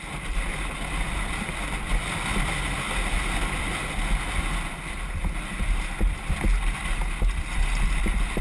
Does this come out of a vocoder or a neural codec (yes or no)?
no